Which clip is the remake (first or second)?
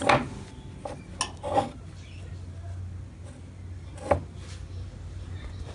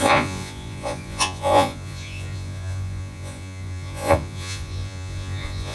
second